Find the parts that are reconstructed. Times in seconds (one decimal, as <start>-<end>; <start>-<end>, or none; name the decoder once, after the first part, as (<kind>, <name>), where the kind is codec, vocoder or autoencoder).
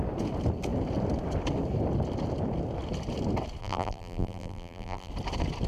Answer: 3.6-5.1 (vocoder, BigVGAN v2)